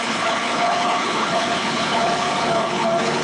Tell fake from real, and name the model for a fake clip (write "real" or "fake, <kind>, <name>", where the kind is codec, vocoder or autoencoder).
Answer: fake, codec, HILCodec